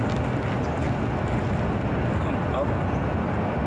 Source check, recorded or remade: recorded